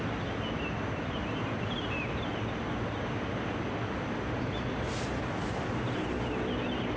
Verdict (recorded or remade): recorded